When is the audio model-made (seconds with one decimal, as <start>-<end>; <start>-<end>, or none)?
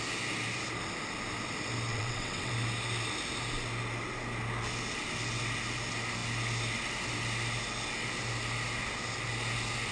1.9-2.5